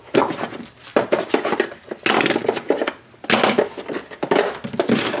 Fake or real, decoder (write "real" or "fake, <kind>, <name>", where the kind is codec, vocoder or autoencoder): real